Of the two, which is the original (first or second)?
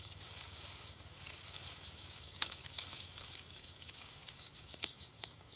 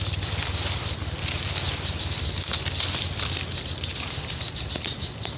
second